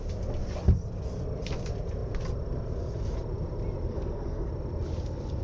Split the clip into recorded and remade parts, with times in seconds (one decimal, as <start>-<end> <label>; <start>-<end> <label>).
0.0-3.9 recorded; 3.9-4.5 remade; 4.5-5.4 recorded